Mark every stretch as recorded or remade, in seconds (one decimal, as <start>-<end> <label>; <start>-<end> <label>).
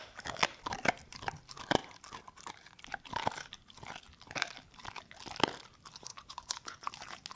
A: 0.0-6.1 recorded; 6.1-6.9 remade; 6.9-7.4 recorded